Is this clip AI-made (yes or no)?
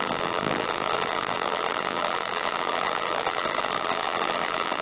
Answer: yes